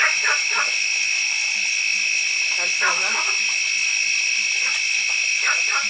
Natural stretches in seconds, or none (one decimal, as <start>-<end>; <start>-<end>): 0.0-5.9

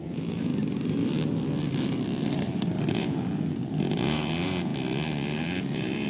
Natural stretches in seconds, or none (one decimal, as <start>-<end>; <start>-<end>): 0.5-2.9; 4.7-5.6

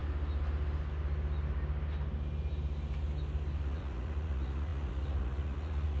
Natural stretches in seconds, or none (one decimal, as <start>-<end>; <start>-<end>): 0.0-3.6

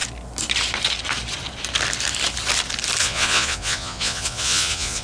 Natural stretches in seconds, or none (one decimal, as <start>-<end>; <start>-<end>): 0.0-3.0

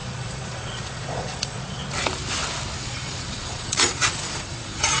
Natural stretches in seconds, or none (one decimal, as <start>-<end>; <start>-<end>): 1.8-2.8

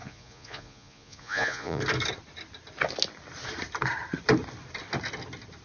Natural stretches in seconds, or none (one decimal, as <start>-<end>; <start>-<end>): 1.8-5.6